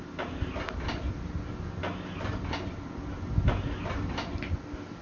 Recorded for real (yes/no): yes